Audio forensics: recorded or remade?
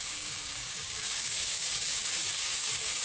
remade